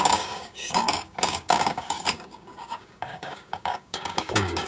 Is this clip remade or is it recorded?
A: remade